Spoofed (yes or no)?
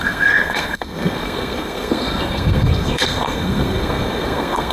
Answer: yes